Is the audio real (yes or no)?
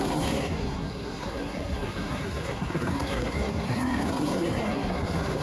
no